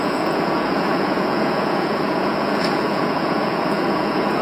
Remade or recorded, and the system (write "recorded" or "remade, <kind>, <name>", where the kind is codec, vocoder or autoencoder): remade, vocoder, Vocos